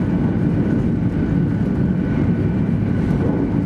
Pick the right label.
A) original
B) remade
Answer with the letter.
A